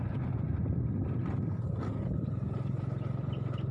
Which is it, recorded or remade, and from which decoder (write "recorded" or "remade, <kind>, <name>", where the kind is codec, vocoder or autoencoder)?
remade, vocoder, BigVGAN v2